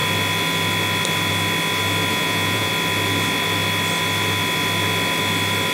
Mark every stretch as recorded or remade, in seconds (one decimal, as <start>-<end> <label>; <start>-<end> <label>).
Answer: 0.0-2.1 recorded; 2.1-2.7 remade; 2.7-5.7 recorded